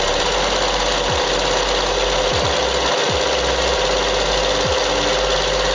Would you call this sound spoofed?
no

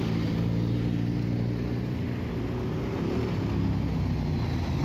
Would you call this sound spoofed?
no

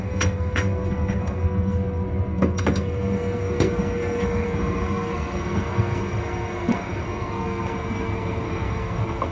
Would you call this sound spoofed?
yes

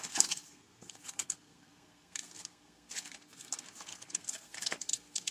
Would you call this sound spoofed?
yes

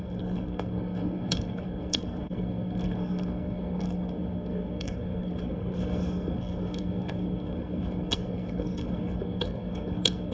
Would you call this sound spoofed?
yes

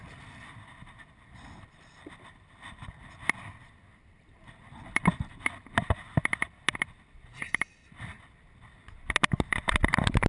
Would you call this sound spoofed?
no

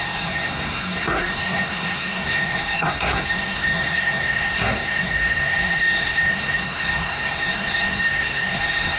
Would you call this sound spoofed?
yes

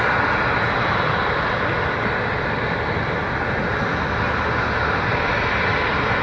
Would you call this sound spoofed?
no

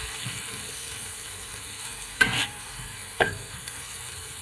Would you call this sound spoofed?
yes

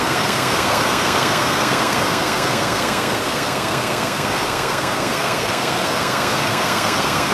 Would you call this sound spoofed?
yes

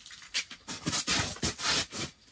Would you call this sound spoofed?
no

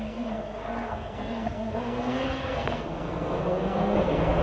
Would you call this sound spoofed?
yes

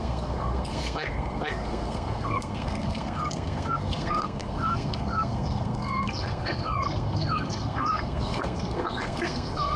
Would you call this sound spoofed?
yes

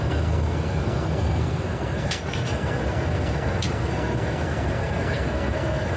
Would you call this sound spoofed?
yes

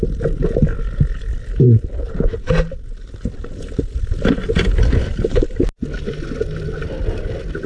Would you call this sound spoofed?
no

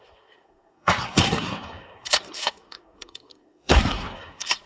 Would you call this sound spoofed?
yes